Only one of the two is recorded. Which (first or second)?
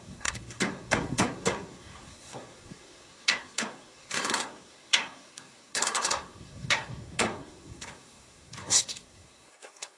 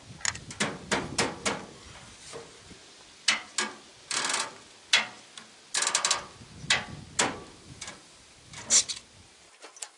second